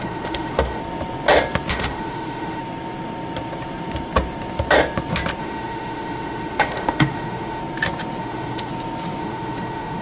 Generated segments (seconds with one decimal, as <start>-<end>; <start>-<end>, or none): 0.0-0.8; 1.7-2.6; 5.4-7.6; 8.2-8.7; 9.2-10.0